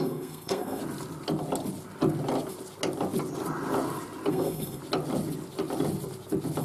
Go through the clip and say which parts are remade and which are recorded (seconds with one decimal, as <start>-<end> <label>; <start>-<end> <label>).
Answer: 0.0-0.8 remade; 0.8-4.3 recorded; 4.3-4.8 remade; 4.8-6.6 recorded